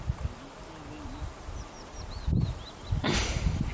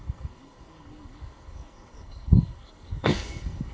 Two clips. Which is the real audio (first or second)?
first